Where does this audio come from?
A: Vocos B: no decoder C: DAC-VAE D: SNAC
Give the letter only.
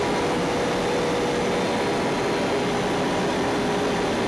B